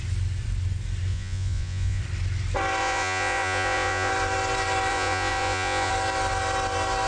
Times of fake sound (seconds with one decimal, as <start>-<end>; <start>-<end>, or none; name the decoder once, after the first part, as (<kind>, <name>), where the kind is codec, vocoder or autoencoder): 1.1-2.0 (vocoder, Vocos); 2.8-4.1; 4.9-5.9